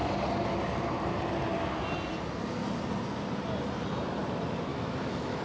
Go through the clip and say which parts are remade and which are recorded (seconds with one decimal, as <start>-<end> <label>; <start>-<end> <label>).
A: 0.0-4.7 recorded; 4.7-5.4 remade